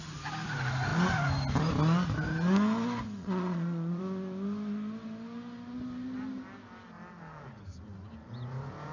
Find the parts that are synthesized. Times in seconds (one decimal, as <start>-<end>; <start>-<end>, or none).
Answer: 3.2-4.0